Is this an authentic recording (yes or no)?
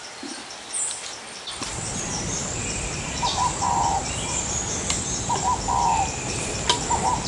yes